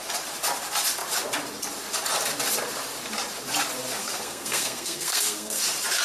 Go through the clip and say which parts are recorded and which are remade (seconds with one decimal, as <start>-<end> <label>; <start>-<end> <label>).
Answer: 0.0-4.0 recorded; 4.0-5.6 remade; 5.6-6.0 recorded